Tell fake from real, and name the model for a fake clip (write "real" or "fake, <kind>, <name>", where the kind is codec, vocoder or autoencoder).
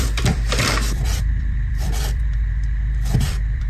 fake, vocoder, BigVGAN v2